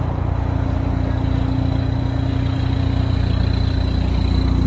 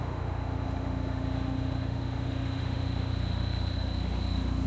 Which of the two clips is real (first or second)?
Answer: first